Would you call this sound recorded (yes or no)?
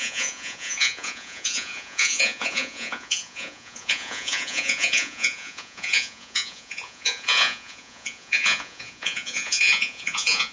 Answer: no